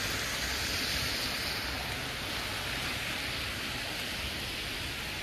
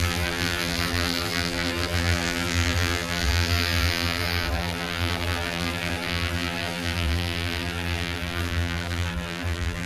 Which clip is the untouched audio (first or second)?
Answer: first